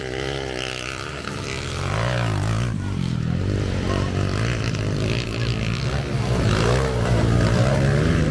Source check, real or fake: real